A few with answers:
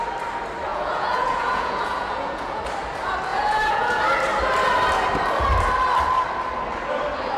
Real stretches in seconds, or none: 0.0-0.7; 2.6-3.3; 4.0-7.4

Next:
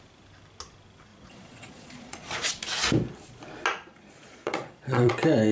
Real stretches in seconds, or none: 0.0-1.1; 2.5-3.9; 5.1-5.5

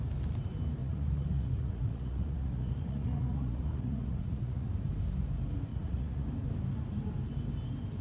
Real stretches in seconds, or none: 0.0-0.8; 4.7-5.7; 6.3-8.0

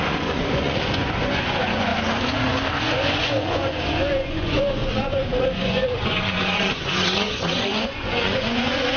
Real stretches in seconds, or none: 1.9-2.7

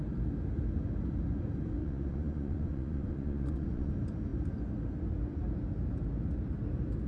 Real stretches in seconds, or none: 0.0-1.8; 3.9-7.1